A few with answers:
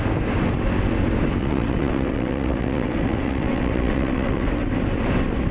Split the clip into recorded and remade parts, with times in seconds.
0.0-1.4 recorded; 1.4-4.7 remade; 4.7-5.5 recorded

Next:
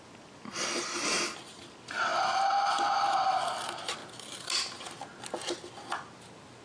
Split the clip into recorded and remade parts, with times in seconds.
0.0-6.6 recorded